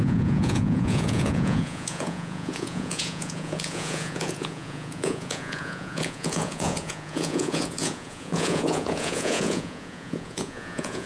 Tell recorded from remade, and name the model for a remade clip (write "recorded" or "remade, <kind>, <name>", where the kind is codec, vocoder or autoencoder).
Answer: remade, vocoder, Vocos